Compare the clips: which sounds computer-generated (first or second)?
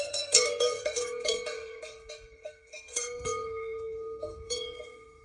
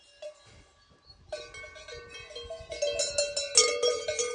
first